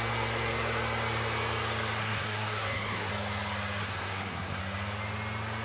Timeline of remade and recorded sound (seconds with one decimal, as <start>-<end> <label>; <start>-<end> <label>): 0.0-2.0 recorded; 2.0-3.1 remade; 3.1-3.8 recorded; 3.8-4.6 remade; 4.6-5.6 recorded